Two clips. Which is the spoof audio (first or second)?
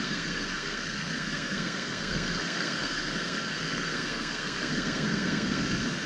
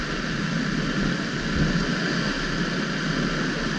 first